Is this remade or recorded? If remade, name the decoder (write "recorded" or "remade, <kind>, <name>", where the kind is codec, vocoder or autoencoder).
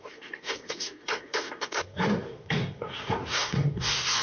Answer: remade, codec, SNAC